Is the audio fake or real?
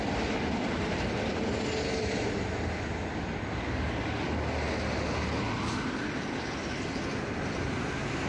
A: real